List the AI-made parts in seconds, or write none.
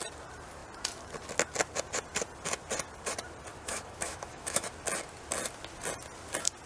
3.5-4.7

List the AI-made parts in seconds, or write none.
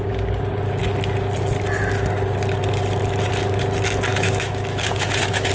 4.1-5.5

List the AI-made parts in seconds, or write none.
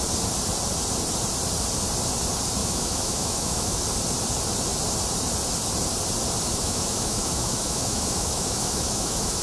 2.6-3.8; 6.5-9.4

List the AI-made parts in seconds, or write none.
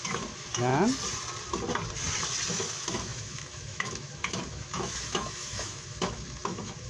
0.0-0.7; 2.5-6.9